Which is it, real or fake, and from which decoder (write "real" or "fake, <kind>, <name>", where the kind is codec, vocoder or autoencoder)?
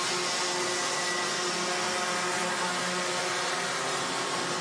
real